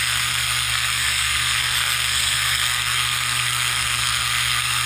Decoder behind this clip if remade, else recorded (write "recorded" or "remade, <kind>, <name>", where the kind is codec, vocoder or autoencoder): remade, codec, SNAC